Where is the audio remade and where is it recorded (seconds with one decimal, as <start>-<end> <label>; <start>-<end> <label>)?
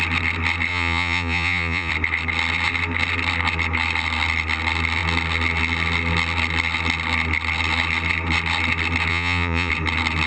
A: 0.0-0.7 recorded; 0.7-1.9 remade; 1.9-9.1 recorded; 9.1-9.7 remade; 9.7-10.3 recorded